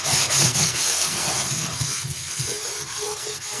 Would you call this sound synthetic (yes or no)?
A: yes